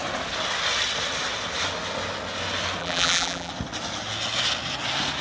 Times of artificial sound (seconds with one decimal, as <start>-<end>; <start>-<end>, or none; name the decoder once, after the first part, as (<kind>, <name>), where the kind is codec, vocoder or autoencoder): 2.8-3.5 (vocoder, BigVGAN v2)